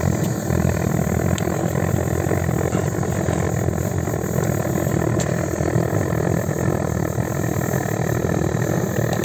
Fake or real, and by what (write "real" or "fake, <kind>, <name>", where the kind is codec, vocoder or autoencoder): real